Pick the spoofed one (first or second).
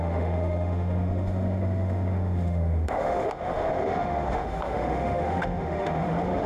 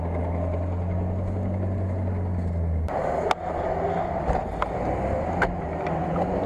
first